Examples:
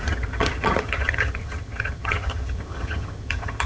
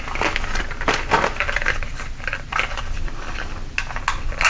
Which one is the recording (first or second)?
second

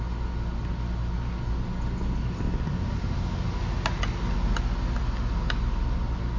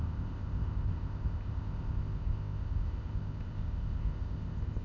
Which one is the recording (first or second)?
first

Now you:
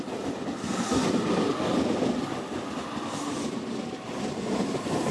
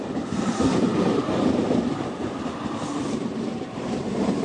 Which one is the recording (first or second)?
first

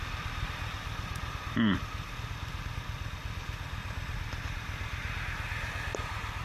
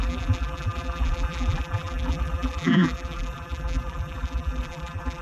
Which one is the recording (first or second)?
first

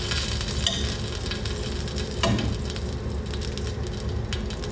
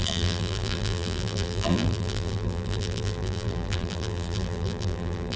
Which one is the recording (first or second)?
first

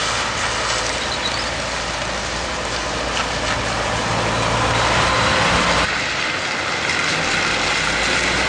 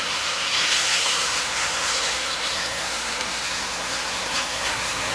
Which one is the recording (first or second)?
first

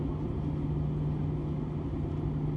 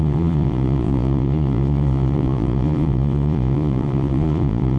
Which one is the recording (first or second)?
first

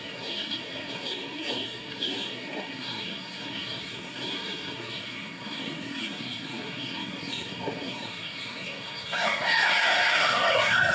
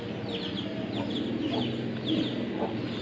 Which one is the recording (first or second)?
second